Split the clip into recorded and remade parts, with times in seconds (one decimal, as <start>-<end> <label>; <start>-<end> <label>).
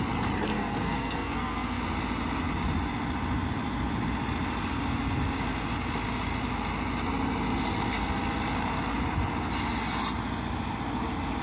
0.0-0.5 recorded; 0.5-1.8 remade; 1.8-11.4 recorded